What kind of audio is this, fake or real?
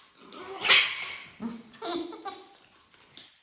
real